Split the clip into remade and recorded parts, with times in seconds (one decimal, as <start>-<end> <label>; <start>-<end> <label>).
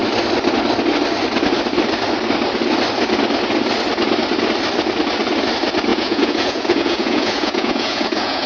0.0-5.9 recorded; 5.9-8.5 remade